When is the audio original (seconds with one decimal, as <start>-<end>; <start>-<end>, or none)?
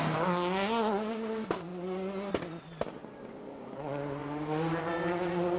0.0-5.6